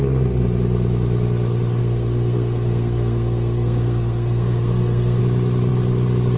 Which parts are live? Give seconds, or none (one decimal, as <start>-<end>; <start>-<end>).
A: 0.0-1.8; 5.2-6.4